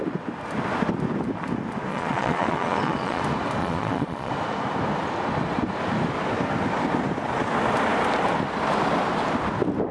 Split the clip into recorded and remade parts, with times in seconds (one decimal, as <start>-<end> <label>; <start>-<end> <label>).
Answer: 0.0-1.9 recorded; 1.9-3.2 remade; 3.2-3.6 recorded; 3.6-4.3 remade; 4.3-9.9 recorded